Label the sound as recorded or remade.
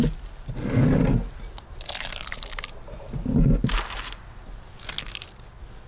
recorded